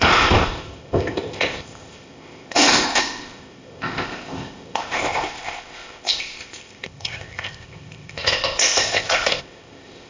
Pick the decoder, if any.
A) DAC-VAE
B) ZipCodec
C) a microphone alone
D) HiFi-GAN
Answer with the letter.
B